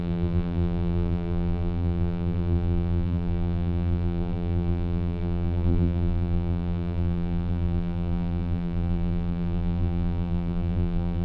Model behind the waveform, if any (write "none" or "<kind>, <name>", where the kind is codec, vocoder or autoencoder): vocoder, BigVGAN v2